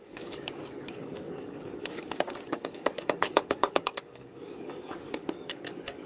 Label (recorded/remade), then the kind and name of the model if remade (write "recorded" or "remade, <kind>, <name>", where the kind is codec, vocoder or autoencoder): remade, codec, DAC